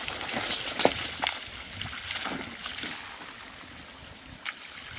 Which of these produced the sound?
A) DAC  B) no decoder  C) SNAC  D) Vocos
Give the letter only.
B